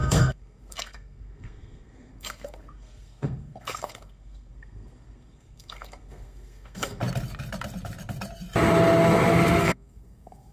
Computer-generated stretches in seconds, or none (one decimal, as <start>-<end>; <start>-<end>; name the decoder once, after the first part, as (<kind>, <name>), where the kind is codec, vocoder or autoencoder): 0.0-7.0 (codec, SNAC); 9.6-10.5